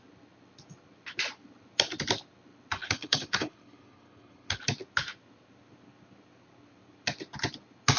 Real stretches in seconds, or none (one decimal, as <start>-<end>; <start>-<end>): 0.0-2.8; 4.6-8.0